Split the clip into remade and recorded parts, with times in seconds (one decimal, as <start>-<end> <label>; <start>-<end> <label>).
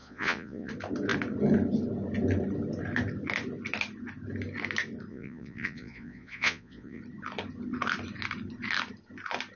0.0-0.7 remade; 0.7-5.1 recorded; 5.1-7.0 remade; 7.0-9.6 recorded